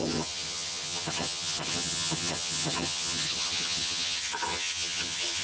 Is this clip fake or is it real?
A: fake